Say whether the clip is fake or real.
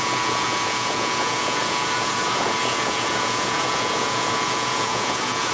fake